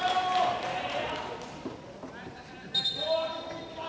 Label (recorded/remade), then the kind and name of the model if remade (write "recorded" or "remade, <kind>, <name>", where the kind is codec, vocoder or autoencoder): recorded